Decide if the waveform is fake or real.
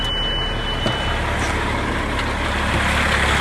real